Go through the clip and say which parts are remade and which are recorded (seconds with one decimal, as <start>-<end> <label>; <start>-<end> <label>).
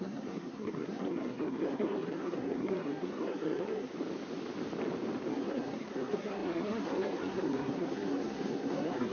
0.0-3.9 remade; 3.9-5.3 recorded; 5.3-9.1 remade